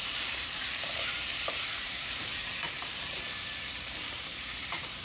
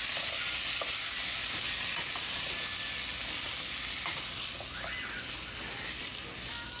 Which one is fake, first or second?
first